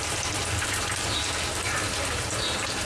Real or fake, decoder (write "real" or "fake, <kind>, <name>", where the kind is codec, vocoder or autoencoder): fake, vocoder, BigVGAN v2